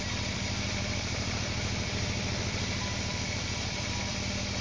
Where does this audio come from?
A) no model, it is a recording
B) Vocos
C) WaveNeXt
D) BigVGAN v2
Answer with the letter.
D